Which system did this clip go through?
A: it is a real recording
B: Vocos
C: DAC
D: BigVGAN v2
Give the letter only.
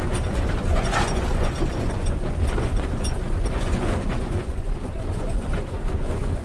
B